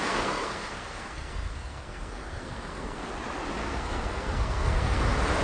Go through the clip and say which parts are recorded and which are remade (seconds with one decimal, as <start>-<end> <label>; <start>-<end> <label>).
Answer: 0.0-3.1 remade; 3.1-3.6 recorded; 3.6-5.0 remade; 5.0-5.4 recorded